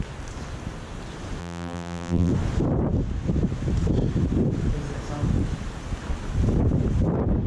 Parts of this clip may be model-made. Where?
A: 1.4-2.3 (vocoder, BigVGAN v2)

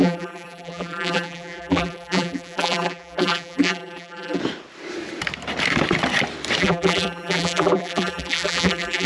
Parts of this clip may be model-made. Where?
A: 0.0-4.4 (vocoder, BigVGAN v2); 6.6-9.1

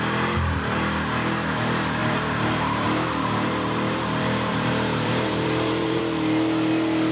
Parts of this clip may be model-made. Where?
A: 2.0-6.0 (vocoder, BigVGAN v2)